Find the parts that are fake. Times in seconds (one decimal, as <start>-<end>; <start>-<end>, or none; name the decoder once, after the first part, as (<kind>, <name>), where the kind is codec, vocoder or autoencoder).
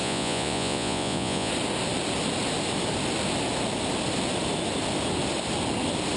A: 0.0-1.5 (vocoder, Vocos)